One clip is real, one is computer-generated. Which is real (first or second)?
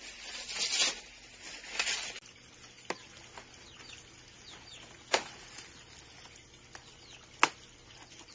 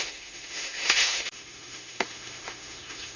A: first